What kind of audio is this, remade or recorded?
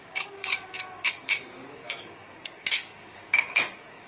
remade